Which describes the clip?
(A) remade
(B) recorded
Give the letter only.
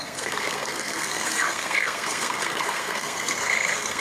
A